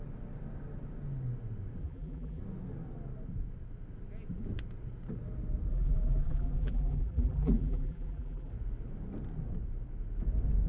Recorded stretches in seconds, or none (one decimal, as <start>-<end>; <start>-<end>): 0.0-1.8; 2.4-5.7; 8.5-10.7